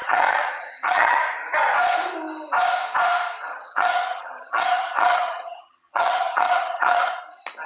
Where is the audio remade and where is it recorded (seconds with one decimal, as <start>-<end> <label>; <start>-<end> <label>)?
0.0-1.2 remade; 1.2-3.5 recorded; 3.5-7.1 remade; 7.1-7.7 recorded